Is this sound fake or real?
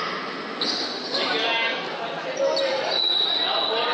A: real